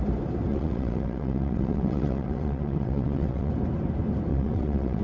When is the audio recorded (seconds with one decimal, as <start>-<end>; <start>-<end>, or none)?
0.0-0.5; 3.5-4.3